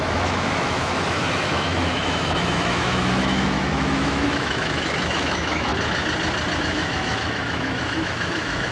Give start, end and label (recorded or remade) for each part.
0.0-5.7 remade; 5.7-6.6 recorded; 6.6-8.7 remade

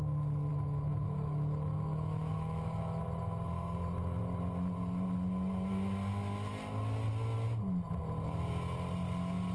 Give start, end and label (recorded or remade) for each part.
0.0-0.5 recorded; 0.5-3.0 remade; 3.0-9.5 recorded

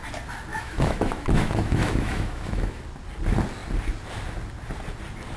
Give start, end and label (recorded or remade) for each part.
0.0-0.5 recorded; 0.5-2.8 remade; 2.8-5.4 recorded

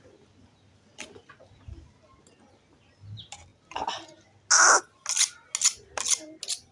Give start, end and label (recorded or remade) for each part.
0.0-6.7 recorded

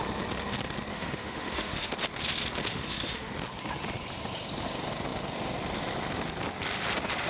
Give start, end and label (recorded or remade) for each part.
0.0-0.9 recorded; 0.9-1.9 remade; 1.9-2.7 recorded; 2.7-3.3 remade; 3.3-7.3 recorded